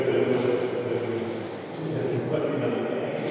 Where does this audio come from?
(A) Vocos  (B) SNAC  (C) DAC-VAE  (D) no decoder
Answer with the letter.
D